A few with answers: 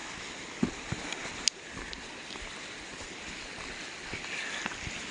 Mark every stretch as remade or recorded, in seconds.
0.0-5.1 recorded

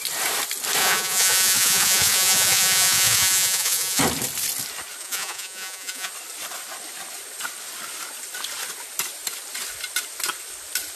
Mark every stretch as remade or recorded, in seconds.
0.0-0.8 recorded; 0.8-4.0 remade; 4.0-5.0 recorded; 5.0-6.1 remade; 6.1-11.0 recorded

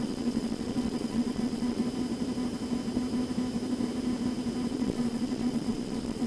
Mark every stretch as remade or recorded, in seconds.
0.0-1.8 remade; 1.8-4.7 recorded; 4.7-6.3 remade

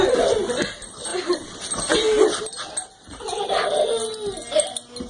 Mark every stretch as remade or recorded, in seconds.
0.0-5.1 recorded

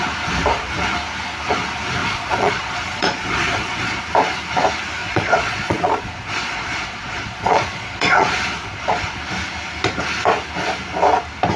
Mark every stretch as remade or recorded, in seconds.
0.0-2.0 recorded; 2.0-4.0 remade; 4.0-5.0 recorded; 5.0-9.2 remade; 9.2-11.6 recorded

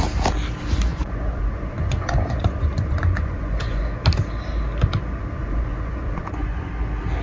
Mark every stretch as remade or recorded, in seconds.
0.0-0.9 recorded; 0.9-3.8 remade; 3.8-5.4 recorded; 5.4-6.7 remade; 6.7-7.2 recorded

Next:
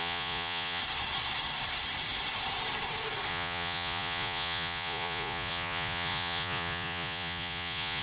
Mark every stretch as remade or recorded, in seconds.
0.0-0.8 remade; 0.8-3.3 recorded; 3.3-8.0 remade

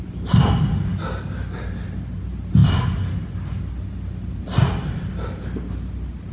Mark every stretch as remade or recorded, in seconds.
0.0-6.3 recorded